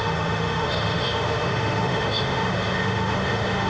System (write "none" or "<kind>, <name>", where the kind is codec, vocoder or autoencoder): autoencoder, DAC-VAE